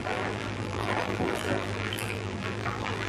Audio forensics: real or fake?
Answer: fake